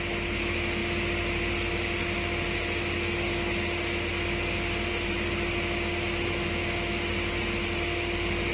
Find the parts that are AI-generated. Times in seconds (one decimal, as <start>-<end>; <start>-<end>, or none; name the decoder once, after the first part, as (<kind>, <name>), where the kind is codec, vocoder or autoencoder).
none